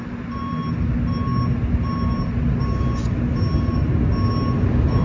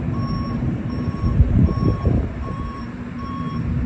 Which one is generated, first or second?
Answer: second